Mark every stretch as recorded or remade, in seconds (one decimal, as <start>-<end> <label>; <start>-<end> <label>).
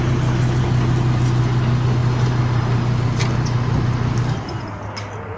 0.0-5.4 recorded